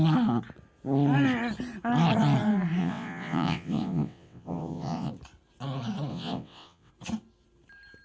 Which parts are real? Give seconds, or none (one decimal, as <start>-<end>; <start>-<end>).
0.0-2.8; 5.1-6.1; 6.9-8.0